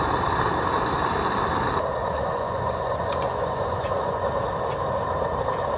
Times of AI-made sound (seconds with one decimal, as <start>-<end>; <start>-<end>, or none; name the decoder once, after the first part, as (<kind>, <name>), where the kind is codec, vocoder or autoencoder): 2.0-4.2 (vocoder, Vocos)